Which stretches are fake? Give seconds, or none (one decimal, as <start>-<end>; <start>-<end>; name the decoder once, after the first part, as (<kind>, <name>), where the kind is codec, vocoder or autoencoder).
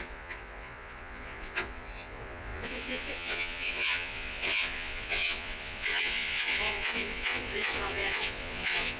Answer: 0.0-9.0 (vocoder, Vocos)